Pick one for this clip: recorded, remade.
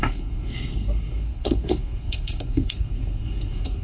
remade